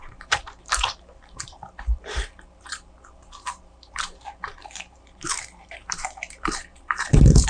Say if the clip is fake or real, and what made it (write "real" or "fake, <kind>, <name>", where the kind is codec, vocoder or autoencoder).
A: fake, vocoder, BigVGAN v2